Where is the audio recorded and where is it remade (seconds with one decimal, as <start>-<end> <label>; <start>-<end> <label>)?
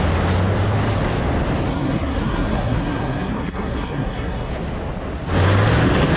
0.0-1.7 recorded; 1.7-4.5 remade; 4.5-6.2 recorded